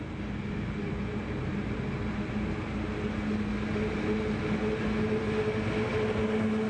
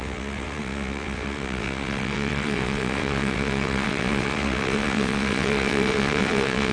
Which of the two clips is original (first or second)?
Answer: first